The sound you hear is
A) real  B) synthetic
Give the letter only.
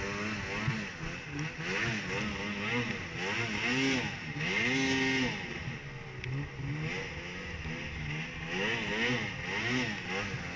A